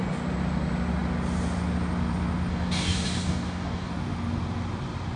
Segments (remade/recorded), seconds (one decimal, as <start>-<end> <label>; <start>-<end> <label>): 0.0-2.5 recorded; 2.5-3.9 remade; 3.9-5.2 recorded